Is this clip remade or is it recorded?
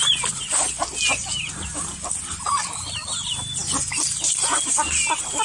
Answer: recorded